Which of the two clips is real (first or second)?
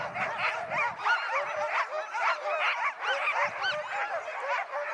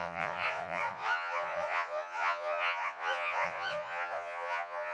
first